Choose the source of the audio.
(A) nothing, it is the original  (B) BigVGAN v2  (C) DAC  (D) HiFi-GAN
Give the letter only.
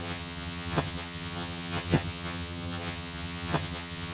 D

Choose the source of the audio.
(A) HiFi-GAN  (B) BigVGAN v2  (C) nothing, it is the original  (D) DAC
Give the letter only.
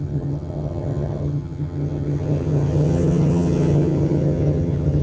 A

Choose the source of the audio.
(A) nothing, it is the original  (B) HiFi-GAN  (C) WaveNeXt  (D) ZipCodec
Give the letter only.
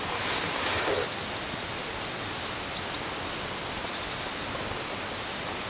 A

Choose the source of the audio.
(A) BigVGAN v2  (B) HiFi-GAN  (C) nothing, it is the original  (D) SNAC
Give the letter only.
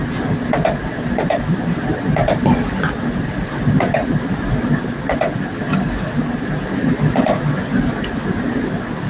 C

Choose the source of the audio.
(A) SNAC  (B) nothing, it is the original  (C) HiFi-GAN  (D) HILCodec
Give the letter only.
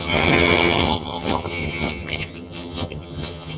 C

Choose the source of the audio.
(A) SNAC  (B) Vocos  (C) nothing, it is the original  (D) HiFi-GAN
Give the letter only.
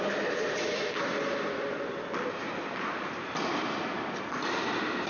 C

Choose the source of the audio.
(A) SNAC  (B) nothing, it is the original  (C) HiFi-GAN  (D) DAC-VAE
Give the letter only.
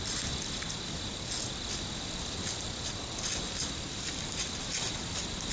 B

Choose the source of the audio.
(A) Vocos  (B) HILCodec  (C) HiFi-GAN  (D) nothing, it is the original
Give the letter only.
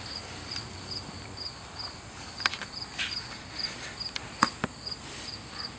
D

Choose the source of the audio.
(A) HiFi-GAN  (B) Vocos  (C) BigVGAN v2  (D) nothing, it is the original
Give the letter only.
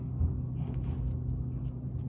D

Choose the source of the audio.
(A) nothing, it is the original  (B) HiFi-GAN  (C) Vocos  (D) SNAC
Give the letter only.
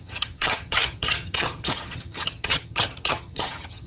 B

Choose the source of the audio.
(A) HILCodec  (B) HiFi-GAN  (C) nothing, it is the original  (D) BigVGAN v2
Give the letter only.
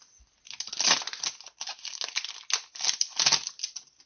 C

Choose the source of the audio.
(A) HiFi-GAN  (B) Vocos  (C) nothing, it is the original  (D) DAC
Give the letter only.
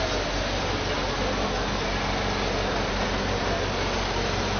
C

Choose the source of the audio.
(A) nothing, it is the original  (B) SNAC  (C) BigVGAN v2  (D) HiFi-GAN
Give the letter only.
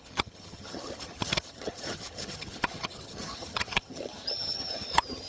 D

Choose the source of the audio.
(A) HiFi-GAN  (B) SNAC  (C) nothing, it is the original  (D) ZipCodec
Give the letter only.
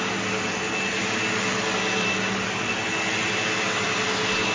C